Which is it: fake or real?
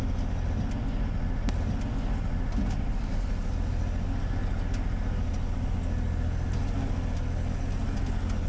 real